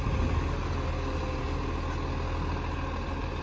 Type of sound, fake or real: real